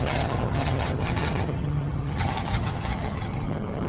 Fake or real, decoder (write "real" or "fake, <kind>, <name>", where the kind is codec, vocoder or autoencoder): fake, vocoder, HiFi-GAN